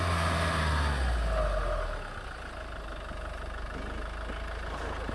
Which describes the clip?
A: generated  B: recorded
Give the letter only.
B